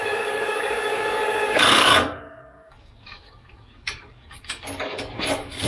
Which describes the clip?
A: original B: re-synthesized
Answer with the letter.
B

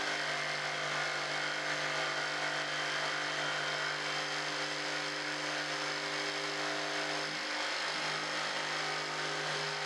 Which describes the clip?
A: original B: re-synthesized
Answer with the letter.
A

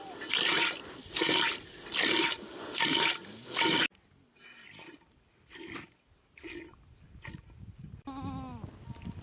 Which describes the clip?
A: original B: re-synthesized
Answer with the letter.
A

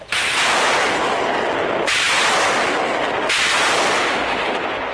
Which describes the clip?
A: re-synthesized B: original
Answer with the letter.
B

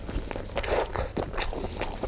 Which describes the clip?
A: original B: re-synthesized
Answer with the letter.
A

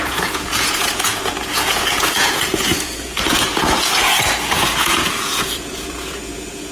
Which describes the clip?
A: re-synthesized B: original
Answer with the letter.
A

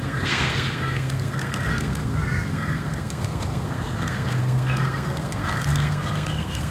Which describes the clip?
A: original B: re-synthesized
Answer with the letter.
B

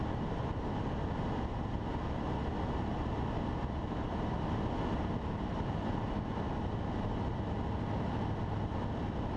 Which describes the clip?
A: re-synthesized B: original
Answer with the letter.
B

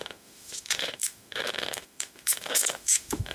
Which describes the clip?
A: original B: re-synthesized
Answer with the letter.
B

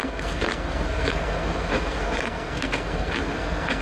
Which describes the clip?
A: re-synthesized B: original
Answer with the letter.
A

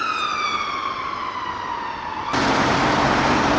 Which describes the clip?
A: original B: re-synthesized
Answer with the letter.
A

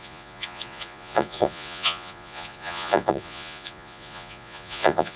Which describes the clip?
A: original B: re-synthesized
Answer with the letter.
B